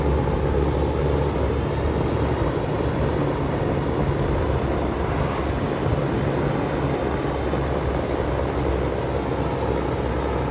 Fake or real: real